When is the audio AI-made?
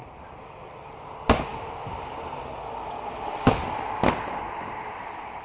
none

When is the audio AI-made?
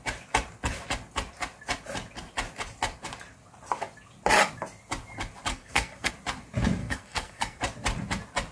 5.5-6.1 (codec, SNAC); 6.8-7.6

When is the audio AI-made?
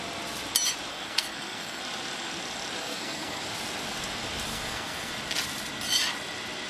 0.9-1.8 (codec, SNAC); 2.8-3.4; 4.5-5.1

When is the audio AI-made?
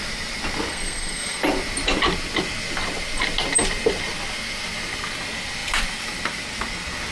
0.7-1.4 (codec, SNAC)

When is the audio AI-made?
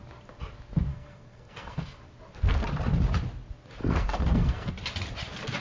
0.9-2.0 (codec, SNAC); 3.8-4.7